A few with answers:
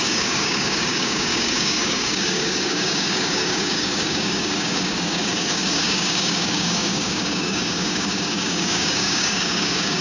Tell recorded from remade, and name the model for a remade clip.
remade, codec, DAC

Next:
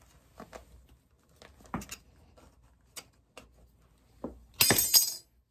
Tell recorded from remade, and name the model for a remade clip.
recorded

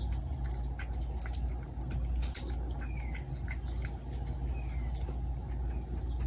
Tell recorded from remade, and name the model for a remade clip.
recorded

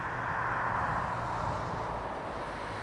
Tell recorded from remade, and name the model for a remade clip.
recorded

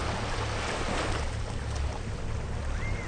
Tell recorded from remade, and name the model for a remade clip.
recorded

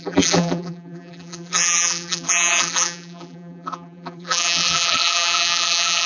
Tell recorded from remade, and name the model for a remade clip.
remade, vocoder, BigVGAN v2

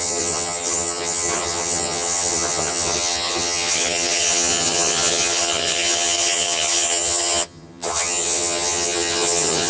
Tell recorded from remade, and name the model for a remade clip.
remade, vocoder, HiFi-GAN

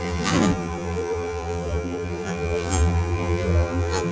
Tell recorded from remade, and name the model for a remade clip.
remade, vocoder, BigVGAN v2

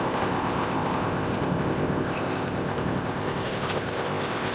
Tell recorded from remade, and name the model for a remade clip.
remade, codec, ZipCodec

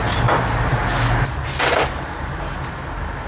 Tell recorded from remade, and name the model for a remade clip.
recorded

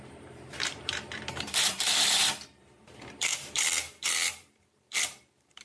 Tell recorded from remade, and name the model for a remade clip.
remade, vocoder, BigVGAN v2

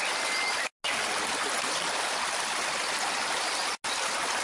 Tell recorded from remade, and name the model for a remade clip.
recorded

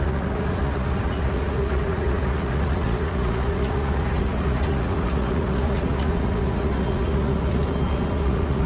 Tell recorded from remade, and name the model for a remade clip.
remade, vocoder, Vocos